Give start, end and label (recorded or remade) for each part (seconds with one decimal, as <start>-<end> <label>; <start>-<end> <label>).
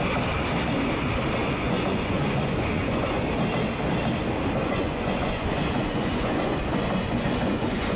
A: 0.0-1.4 recorded; 1.4-3.2 remade; 3.2-4.6 recorded; 4.6-8.0 remade